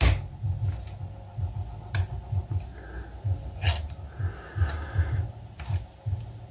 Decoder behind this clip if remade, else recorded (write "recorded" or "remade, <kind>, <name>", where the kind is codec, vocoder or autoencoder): recorded